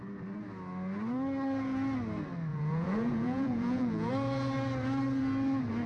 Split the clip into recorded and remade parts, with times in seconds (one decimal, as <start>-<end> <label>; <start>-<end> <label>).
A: 0.0-2.5 recorded; 2.5-4.1 remade; 4.1-5.9 recorded